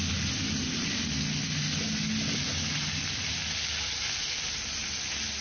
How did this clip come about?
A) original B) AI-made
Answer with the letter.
A